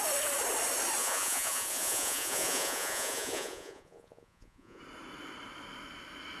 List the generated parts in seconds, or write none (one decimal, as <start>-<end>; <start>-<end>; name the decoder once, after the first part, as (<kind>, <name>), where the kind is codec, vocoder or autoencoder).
1.0-4.8 (vocoder, Vocos)